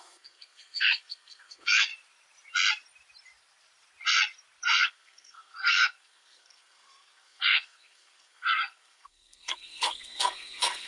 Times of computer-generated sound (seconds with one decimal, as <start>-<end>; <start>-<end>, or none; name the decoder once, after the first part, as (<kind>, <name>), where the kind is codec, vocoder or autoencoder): 0.0-1.9 (codec, SNAC); 4.8-10.9